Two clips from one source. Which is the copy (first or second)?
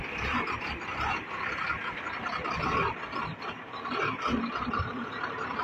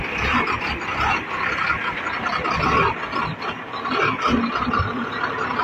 first